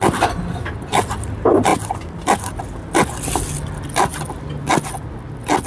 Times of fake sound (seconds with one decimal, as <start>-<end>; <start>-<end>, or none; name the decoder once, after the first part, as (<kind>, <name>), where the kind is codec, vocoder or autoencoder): none